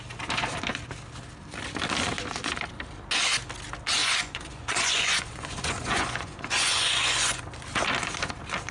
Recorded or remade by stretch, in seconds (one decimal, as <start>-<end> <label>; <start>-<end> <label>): 0.0-4.0 recorded; 4.0-7.4 remade; 7.4-8.7 recorded